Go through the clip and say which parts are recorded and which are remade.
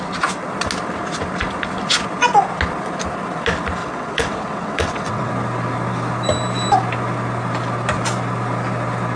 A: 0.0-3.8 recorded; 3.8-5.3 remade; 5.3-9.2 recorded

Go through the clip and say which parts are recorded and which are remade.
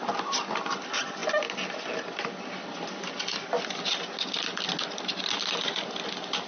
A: 0.0-6.5 recorded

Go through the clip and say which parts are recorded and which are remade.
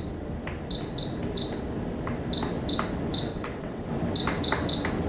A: 0.0-3.3 recorded; 3.3-3.9 remade; 3.9-5.1 recorded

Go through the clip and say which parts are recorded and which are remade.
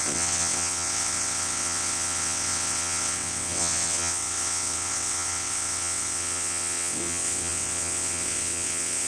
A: 0.0-9.1 remade